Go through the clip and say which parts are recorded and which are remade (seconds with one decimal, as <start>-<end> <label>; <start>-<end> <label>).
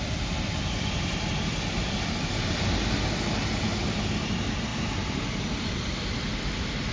0.0-4.7 recorded; 4.7-5.7 remade; 5.7-6.9 recorded